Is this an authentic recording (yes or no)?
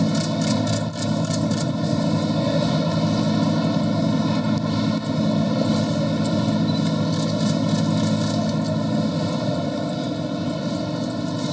yes